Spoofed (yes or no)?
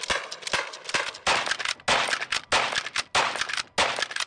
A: no